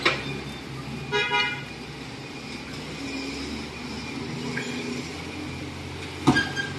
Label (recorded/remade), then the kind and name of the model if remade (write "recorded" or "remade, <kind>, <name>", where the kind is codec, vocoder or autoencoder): recorded